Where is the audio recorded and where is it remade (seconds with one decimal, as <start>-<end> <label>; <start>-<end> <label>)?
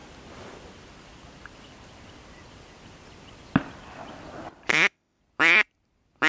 0.0-4.7 recorded; 4.7-5.2 remade; 5.2-6.3 recorded